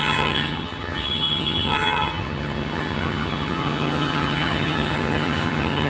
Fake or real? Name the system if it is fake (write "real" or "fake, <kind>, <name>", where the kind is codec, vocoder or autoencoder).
fake, vocoder, HiFi-GAN